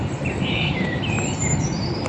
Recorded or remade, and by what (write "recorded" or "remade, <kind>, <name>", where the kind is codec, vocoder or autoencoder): remade, vocoder, BigVGAN v2